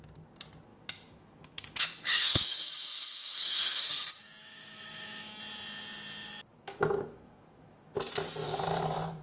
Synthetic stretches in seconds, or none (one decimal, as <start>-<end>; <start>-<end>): 0.7-3.9; 4.4-5.3; 6.5-8.0